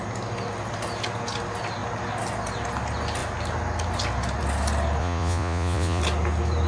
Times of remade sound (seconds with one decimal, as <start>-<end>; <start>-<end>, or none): 5.0-6.0